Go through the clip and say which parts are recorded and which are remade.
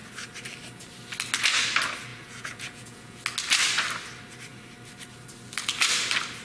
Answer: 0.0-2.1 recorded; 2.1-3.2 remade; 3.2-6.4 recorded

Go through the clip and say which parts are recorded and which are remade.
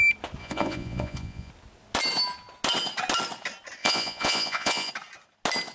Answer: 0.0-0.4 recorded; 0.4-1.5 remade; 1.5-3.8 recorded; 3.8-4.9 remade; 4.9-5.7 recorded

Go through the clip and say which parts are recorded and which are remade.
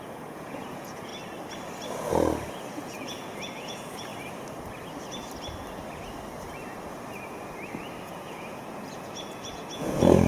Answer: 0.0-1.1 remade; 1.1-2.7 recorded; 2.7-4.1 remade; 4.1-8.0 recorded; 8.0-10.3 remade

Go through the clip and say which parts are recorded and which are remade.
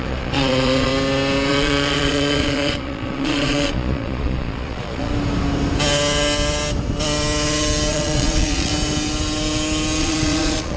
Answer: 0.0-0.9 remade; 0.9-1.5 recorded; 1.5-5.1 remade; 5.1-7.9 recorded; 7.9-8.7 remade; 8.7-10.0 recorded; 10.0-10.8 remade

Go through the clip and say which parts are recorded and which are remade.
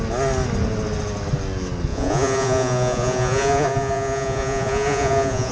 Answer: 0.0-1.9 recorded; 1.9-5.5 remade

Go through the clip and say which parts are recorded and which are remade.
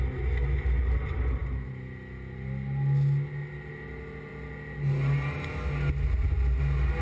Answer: 0.0-7.0 recorded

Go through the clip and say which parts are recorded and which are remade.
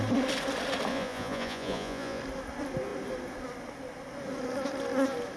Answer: 0.0-0.9 recorded; 0.9-2.2 remade; 2.2-5.4 recorded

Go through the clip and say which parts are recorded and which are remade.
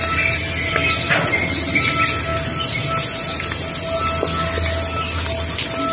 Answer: 0.0-5.9 recorded